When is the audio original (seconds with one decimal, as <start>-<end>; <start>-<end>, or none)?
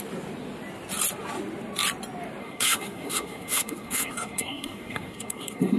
0.0-2.4